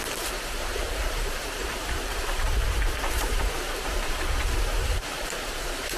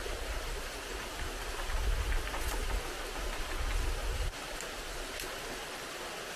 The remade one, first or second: first